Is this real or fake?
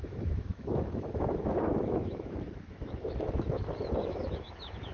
fake